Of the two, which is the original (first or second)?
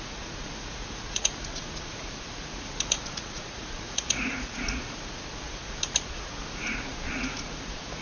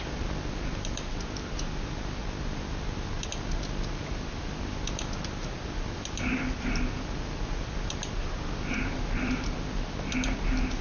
second